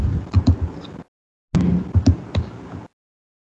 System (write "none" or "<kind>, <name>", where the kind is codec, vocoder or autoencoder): none